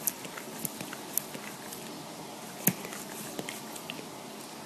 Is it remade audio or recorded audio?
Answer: recorded